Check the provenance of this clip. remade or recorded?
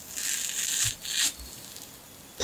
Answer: recorded